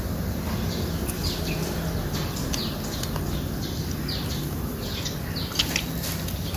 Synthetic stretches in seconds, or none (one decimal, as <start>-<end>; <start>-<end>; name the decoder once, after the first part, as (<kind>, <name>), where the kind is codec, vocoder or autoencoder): none